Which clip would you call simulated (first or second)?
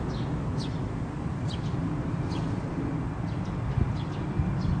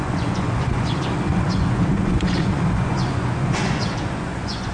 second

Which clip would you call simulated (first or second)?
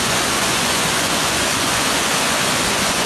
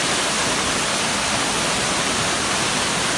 first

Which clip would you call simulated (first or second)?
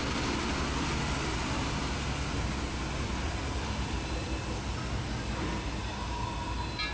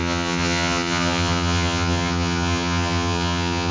second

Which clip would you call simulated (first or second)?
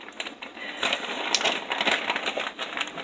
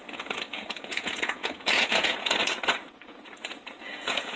second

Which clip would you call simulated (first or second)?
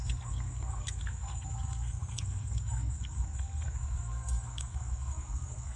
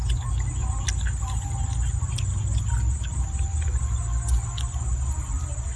first